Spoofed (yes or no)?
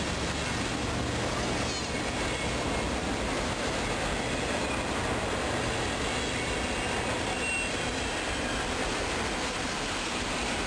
no